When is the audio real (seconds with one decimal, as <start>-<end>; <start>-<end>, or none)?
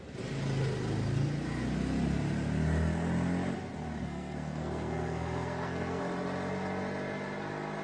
0.0-4.0; 6.0-7.8